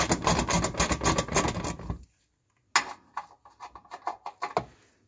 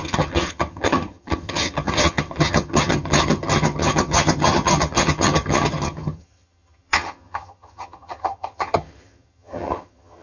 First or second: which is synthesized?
second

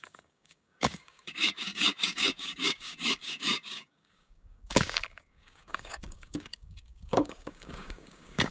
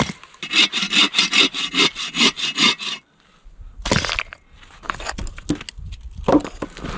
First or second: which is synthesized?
first